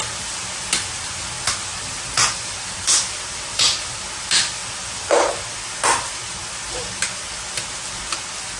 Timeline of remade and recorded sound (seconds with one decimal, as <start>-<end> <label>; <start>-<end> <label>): 0.0-8.6 recorded